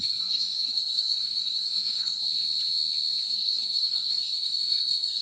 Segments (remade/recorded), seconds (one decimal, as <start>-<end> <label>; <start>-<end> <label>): 0.0-2.2 remade; 2.2-3.2 recorded; 3.2-5.2 remade